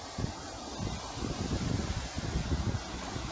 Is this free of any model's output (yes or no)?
yes